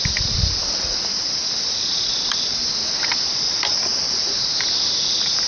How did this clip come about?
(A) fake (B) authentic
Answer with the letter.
B